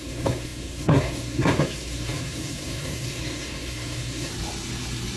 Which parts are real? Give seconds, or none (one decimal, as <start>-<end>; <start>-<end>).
4.3-5.2